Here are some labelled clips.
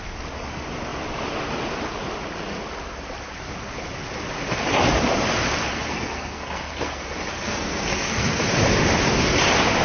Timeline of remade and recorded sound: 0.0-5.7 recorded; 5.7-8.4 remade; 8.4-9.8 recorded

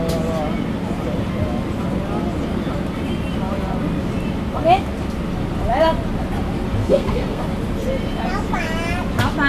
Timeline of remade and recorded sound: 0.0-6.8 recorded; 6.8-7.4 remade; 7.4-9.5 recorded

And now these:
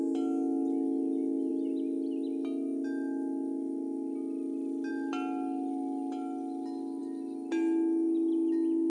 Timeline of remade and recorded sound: 0.0-8.9 recorded